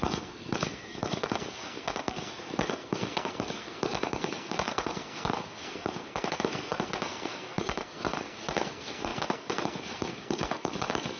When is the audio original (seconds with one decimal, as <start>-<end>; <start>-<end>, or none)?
none